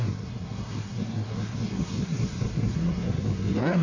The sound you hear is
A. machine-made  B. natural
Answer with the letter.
A